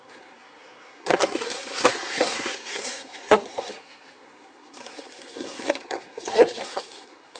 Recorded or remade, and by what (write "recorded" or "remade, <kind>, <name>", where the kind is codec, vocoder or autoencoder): remade, codec, SNAC